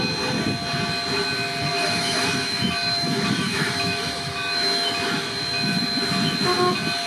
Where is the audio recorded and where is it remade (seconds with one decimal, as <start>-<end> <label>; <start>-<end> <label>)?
0.0-1.7 recorded; 1.7-5.8 remade; 5.8-7.1 recorded